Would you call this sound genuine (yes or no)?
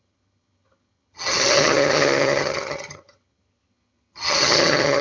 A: no